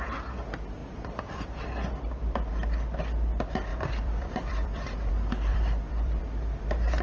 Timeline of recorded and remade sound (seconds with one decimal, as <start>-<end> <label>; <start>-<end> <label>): 0.0-0.8 recorded; 0.8-1.4 remade; 1.4-3.7 recorded; 3.7-5.1 remade; 5.1-5.5 recorded; 5.5-6.2 remade; 6.2-7.0 recorded